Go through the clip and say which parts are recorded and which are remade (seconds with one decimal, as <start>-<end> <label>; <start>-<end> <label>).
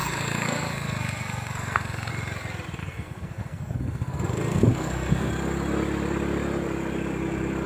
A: 0.0-2.1 remade; 2.1-2.8 recorded; 2.8-5.3 remade; 5.3-7.7 recorded